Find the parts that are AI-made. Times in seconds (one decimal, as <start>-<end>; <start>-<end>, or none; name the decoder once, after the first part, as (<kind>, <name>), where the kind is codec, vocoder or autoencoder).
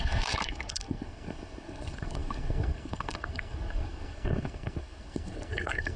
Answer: 0.0-6.0 (codec, SNAC)